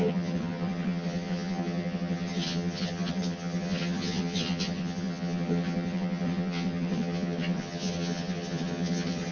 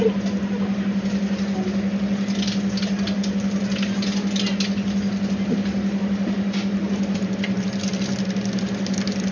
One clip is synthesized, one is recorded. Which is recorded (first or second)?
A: second